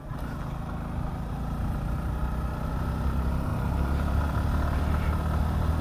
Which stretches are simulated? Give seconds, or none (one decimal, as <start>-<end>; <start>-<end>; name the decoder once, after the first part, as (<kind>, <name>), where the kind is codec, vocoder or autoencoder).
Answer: 1.1-2.2 (vocoder, BigVGAN v2); 3.5-4.2

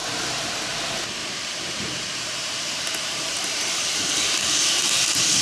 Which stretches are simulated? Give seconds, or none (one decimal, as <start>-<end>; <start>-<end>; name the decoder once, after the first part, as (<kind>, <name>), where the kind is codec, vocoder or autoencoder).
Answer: 0.0-0.5 (vocoder, BigVGAN v2); 1.2-4.4

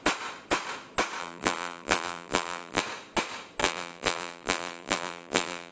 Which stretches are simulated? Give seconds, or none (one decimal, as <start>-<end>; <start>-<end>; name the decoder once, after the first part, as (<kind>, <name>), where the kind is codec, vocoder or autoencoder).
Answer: 1.2-2.8 (vocoder, BigVGAN v2); 3.6-5.7

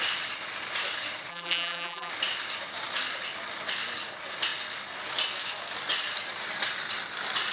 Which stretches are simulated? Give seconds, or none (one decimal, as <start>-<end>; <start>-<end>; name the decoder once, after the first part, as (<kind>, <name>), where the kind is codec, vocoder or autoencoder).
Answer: 1.3-2.1 (vocoder, BigVGAN v2)

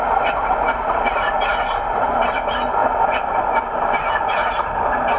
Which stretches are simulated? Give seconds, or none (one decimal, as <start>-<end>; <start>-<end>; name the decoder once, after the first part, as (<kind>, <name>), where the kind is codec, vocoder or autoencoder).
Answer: 0.0-5.2 (vocoder, BigVGAN v2)

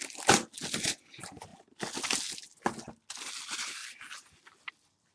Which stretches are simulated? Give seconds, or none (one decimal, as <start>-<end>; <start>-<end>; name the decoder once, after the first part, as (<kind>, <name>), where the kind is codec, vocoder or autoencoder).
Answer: 3.8-4.3 (vocoder, BigVGAN v2)